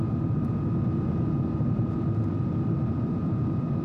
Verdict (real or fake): real